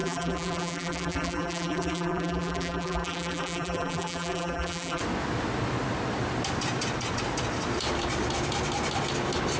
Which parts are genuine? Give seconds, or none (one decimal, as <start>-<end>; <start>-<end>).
5.0-9.6